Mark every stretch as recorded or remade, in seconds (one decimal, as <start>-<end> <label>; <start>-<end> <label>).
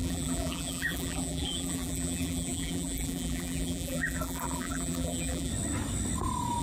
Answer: 0.0-5.5 remade; 5.5-6.6 recorded